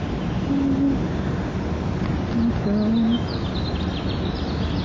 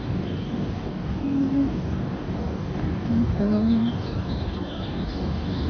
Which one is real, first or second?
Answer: first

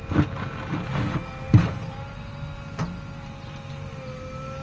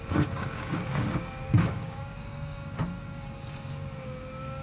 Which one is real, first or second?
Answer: first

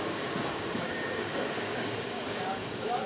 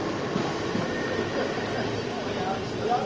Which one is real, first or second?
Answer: second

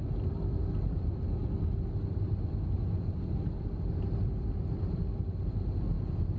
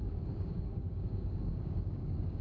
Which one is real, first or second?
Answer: first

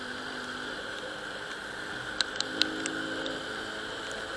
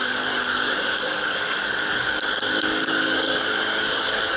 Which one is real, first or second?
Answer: first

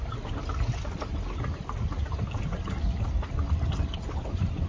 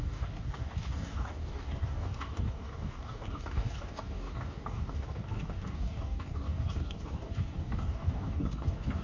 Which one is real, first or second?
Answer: first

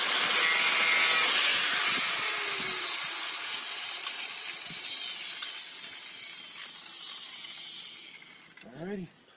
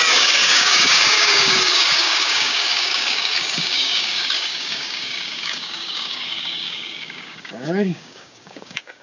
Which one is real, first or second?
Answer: first